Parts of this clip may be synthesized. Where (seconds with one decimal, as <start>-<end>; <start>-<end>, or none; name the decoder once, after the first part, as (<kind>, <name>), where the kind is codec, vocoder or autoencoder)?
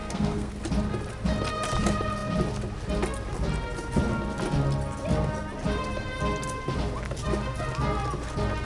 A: 0.0-0.5 (codec, SNAC)